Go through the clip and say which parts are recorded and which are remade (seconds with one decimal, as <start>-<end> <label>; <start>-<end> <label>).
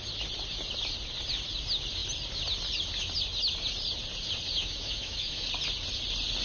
0.0-4.6 recorded; 4.6-5.5 remade; 5.5-6.4 recorded